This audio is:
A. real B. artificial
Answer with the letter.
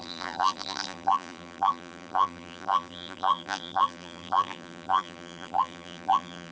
B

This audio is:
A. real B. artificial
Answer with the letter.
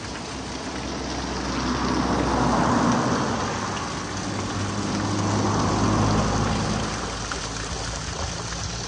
A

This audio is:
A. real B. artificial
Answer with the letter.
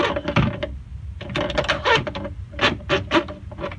A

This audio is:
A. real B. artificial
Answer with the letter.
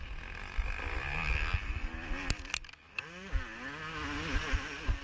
A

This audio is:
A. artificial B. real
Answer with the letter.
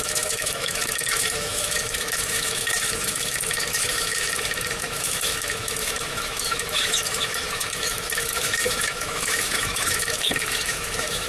A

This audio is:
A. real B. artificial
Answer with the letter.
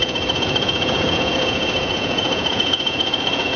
B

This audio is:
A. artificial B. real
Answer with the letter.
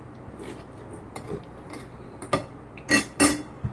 B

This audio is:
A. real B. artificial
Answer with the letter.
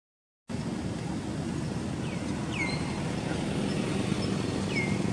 A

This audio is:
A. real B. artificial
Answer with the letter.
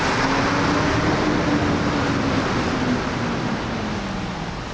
A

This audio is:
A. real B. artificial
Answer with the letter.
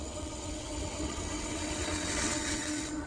B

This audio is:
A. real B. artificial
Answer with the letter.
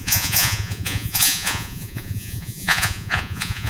B